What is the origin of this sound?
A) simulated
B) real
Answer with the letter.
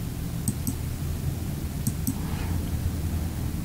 B